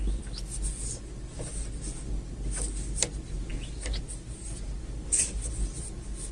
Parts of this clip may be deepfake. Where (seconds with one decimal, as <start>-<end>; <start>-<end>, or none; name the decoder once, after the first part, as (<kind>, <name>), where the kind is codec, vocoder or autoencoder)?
none